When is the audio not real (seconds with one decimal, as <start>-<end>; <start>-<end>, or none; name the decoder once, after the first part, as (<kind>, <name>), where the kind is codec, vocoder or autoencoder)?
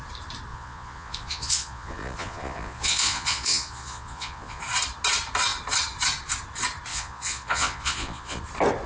0.5-4.6 (vocoder, Vocos); 6.9-8.4